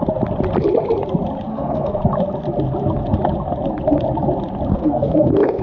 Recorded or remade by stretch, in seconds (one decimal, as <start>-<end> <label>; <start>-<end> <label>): 0.0-1.5 recorded; 1.5-2.0 remade; 2.0-4.7 recorded; 4.7-5.6 remade